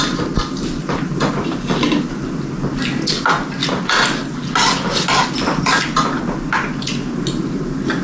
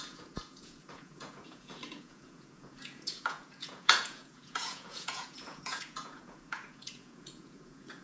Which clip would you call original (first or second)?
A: first